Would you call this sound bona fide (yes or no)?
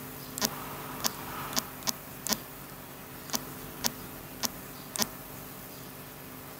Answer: yes